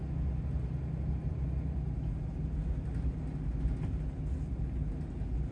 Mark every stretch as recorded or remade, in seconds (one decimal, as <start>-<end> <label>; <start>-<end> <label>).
0.0-5.5 recorded